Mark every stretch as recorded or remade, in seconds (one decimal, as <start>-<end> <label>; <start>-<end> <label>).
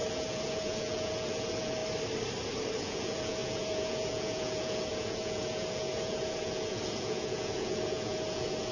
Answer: 0.0-1.8 remade; 1.8-2.8 recorded; 2.8-8.7 remade